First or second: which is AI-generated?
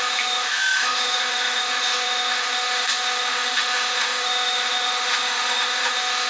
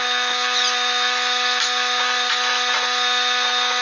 first